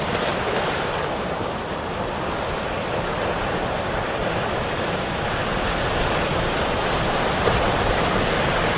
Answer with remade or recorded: remade